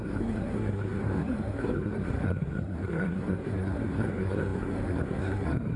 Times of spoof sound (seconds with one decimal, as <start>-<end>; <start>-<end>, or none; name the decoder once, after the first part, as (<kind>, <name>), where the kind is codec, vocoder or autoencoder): 0.0-5.8 (codec, SNAC)